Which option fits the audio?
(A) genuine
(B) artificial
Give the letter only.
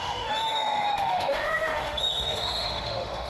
B